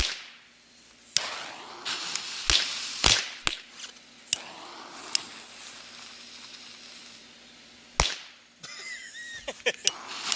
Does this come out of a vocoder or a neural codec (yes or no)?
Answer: no